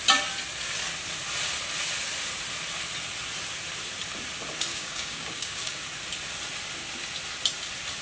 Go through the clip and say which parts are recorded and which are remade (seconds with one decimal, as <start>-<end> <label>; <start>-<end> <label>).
0.0-4.7 recorded; 4.7-5.8 remade; 5.8-8.0 recorded